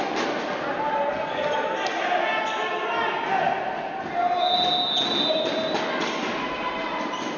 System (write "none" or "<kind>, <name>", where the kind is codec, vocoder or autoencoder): none